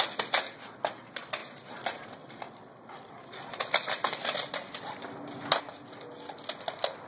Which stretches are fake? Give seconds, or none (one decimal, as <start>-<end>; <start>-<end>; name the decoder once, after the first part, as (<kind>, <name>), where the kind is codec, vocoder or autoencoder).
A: 1.4-5.6 (vocoder, BigVGAN v2)